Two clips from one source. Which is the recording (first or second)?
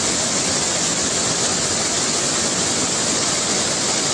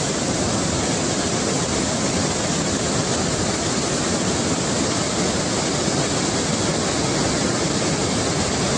second